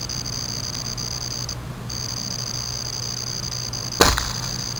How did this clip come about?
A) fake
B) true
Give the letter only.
B